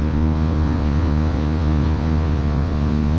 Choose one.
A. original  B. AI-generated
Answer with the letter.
B